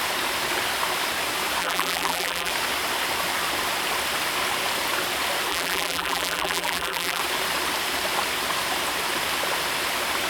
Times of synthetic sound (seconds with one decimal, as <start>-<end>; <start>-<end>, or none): 1.6-2.5; 5.5-7.2